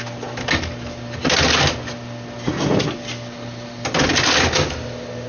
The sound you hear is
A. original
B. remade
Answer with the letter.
A